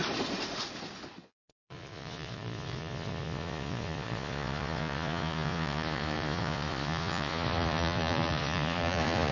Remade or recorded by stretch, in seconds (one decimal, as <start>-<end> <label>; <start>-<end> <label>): 0.0-1.2 recorded; 1.2-9.3 remade